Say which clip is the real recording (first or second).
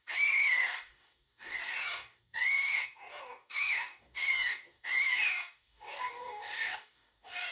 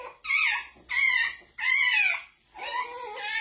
second